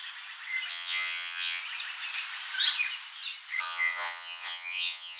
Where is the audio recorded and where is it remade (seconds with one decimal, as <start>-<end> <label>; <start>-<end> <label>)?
0.0-0.7 recorded; 0.7-1.6 remade; 1.6-3.6 recorded; 3.6-5.2 remade

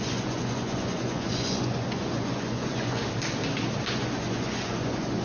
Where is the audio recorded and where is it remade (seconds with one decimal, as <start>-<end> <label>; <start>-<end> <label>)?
0.0-3.0 remade; 3.0-3.9 recorded; 3.9-5.2 remade

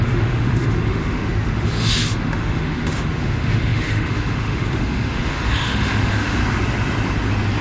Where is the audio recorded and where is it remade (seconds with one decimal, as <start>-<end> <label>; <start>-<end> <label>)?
0.0-6.4 remade; 6.4-7.6 recorded

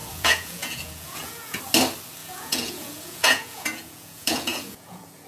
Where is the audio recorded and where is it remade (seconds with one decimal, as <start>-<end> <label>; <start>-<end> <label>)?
0.0-1.6 remade; 1.6-2.2 recorded; 2.2-5.3 remade

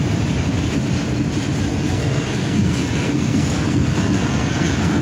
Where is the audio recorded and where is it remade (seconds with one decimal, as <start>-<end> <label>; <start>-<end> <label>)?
0.0-1.7 recorded; 1.7-5.0 remade